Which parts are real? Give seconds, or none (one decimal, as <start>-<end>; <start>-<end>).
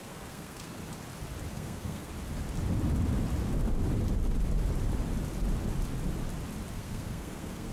0.8-1.5; 2.1-6.7